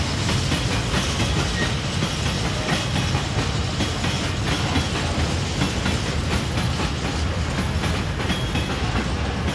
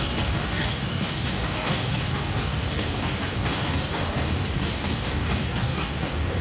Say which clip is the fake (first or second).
second